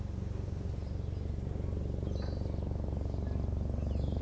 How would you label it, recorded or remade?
recorded